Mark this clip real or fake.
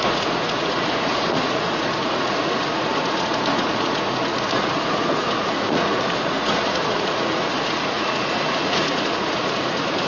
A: fake